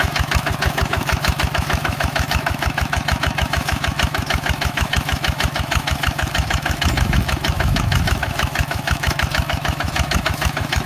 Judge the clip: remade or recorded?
remade